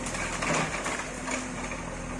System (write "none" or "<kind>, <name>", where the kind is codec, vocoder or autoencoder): none